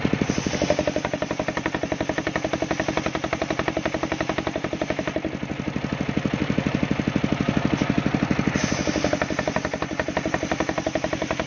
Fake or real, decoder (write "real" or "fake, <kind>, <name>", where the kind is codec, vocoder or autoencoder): real